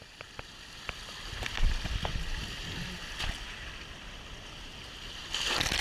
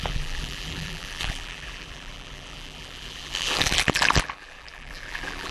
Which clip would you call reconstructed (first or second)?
second